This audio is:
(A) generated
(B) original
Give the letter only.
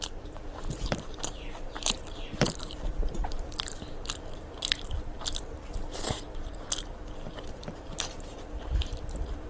A